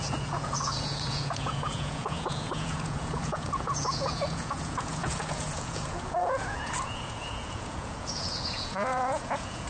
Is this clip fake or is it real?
fake